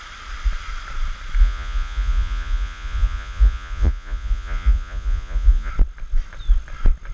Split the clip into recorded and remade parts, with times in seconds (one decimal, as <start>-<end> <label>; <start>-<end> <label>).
0.0-1.4 recorded; 1.4-5.7 remade; 5.7-7.1 recorded